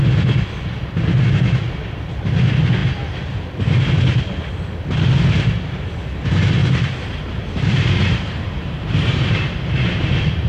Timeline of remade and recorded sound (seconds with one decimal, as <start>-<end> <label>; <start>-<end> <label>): 0.0-6.6 recorded; 6.6-10.5 remade